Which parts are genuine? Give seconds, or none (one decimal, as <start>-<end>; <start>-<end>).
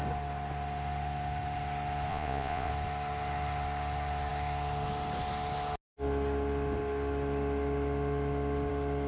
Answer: 0.0-2.1; 2.7-9.1